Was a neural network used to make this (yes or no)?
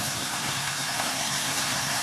yes